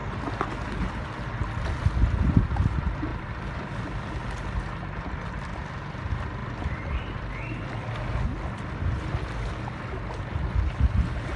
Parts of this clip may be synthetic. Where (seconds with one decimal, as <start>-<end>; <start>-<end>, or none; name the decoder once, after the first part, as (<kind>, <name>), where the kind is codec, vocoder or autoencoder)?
3.1-4.1 (vocoder, BigVGAN v2); 6.4-7.3